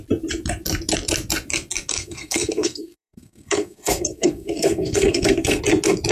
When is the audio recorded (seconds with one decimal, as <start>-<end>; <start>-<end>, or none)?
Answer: 0.0-1.9; 5.6-6.1